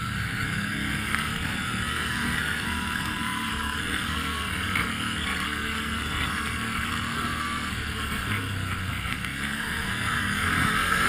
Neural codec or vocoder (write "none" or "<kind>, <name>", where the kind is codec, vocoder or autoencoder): codec, SNAC